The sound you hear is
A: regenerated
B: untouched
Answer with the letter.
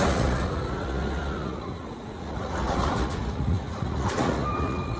A